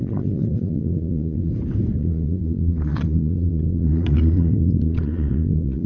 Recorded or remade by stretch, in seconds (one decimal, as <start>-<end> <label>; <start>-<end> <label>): 0.0-1.5 remade; 1.5-2.0 recorded; 2.0-5.9 remade

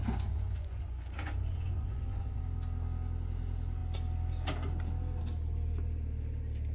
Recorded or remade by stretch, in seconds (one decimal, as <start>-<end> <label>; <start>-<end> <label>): 0.0-2.4 remade; 2.4-6.7 recorded

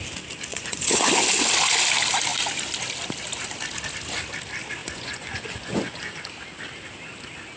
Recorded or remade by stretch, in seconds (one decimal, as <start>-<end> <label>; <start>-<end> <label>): 0.0-0.5 recorded; 0.5-1.2 remade; 1.2-4.8 recorded; 4.8-6.3 remade; 6.3-7.6 recorded

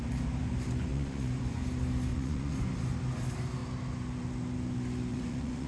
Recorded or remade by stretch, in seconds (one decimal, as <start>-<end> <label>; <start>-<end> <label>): 0.0-0.9 recorded; 0.9-1.6 remade; 1.6-2.1 recorded; 2.1-2.7 remade; 2.7-5.1 recorded; 5.1-5.7 remade

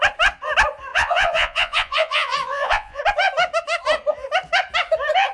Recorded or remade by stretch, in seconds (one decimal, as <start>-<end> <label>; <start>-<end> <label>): 0.0-0.9 recorded; 0.9-3.0 remade; 3.0-5.3 recorded

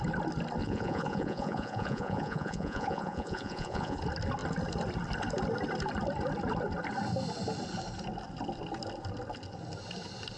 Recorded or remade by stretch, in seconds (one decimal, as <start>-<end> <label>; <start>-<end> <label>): 0.0-0.6 recorded; 0.6-4.0 remade; 4.0-10.4 recorded

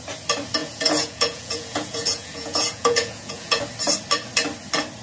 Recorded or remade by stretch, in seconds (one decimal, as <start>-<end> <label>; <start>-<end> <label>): 0.0-0.6 recorded; 0.6-3.6 remade; 3.6-5.0 recorded

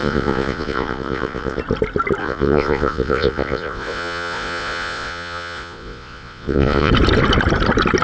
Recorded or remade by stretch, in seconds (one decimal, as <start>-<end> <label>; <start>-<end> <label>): 0.0-1.6 remade; 1.6-2.2 recorded; 2.2-6.9 remade; 6.9-8.0 recorded